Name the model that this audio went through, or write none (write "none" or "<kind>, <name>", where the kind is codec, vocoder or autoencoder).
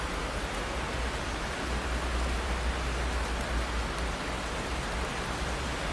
none